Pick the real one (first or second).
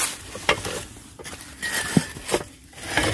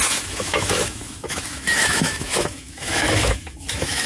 first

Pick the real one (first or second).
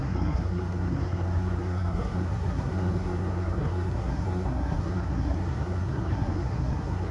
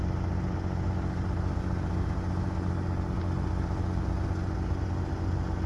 second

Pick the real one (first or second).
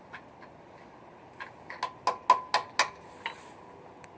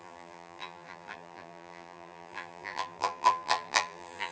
first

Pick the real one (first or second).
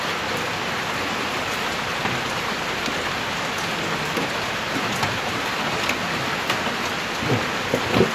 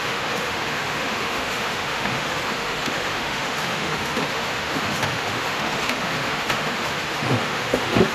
first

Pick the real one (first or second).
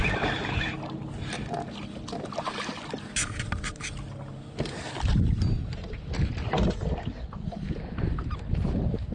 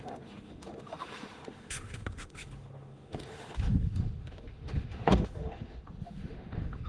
first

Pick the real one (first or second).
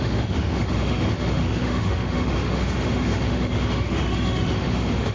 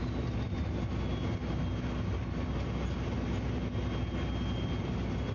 second